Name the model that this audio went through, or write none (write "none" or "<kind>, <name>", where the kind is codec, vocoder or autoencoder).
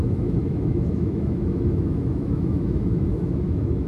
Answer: autoencoder, DAC-VAE